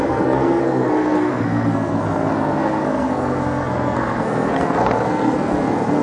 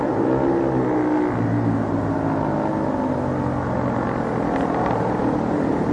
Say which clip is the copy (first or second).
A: first